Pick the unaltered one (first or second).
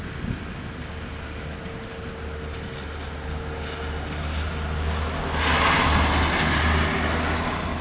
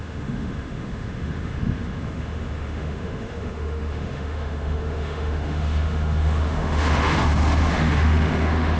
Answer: first